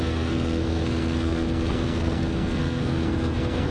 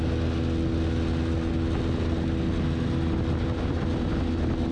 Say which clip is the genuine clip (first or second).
second